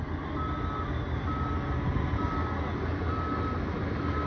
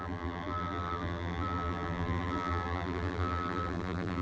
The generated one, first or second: second